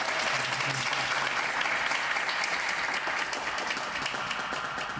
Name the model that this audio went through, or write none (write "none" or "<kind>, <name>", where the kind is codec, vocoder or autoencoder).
none